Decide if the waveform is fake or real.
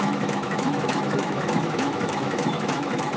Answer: fake